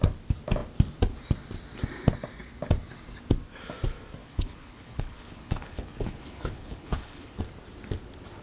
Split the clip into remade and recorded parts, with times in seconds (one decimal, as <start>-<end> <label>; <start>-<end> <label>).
0.0-4.2 recorded; 4.2-7.4 remade; 7.4-8.4 recorded